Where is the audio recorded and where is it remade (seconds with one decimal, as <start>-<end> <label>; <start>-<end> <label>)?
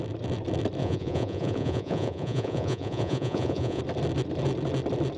0.0-0.8 recorded; 0.8-3.8 remade; 3.8-5.2 recorded